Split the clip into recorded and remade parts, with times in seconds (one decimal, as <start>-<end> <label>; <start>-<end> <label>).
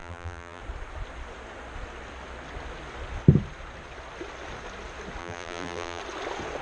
0.0-0.6 remade; 0.6-5.2 recorded; 5.2-6.0 remade; 6.0-6.6 recorded